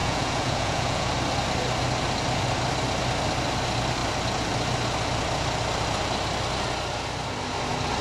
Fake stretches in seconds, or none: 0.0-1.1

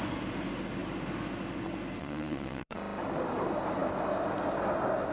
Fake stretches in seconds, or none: 2.0-2.8

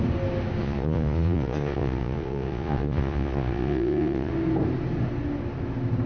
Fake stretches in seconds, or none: 0.6-4.3

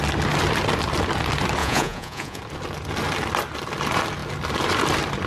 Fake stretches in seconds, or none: 1.6-2.4

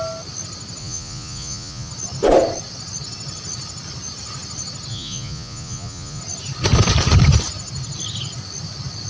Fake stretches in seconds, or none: 0.8-1.9; 4.9-6.2

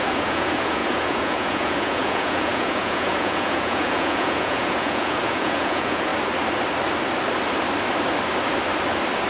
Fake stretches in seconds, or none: 0.0-6.1

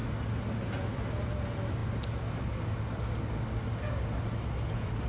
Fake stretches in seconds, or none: none